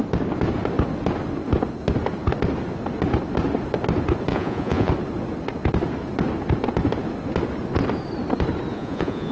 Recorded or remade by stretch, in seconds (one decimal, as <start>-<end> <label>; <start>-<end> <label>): 0.0-4.3 recorded; 4.3-4.9 remade; 4.9-8.7 recorded; 8.7-9.3 remade